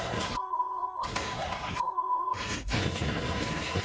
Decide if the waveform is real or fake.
fake